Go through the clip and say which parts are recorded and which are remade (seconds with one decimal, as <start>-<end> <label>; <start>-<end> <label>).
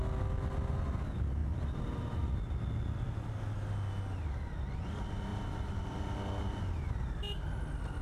0.0-1.4 recorded; 1.4-2.5 remade; 2.5-5.3 recorded; 5.3-6.6 remade; 6.6-8.0 recorded